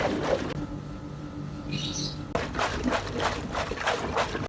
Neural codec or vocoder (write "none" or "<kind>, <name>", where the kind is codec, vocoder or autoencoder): none